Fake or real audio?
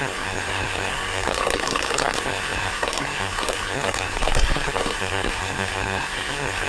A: fake